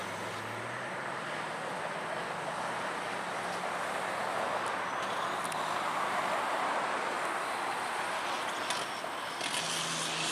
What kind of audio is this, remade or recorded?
recorded